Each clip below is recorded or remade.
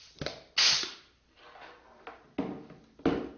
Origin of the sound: recorded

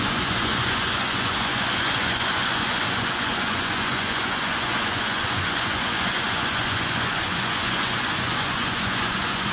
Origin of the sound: remade